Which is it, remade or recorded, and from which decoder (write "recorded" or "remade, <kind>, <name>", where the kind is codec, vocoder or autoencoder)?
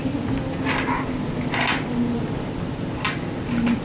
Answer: recorded